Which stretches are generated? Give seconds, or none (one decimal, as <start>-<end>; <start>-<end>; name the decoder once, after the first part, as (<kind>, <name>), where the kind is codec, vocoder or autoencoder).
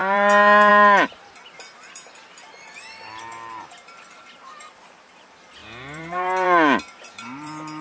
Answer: 0.0-7.8 (vocoder, BigVGAN v2)